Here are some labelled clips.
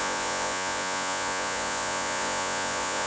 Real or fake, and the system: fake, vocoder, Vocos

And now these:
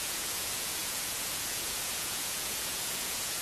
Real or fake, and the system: fake, vocoder, Vocos